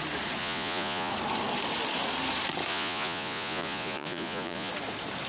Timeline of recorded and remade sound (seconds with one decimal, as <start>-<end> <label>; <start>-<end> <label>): 0.0-0.4 recorded; 0.4-1.1 remade; 1.1-2.7 recorded; 2.7-4.7 remade; 4.7-5.3 recorded